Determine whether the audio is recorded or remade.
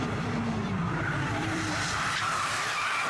remade